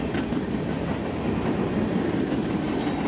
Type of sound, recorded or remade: recorded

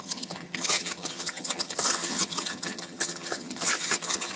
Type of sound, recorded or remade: remade